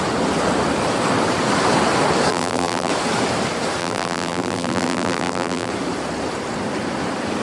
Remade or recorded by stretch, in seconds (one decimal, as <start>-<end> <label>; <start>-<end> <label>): 0.0-2.3 recorded; 2.3-2.9 remade; 2.9-3.8 recorded; 3.8-5.7 remade; 5.7-7.4 recorded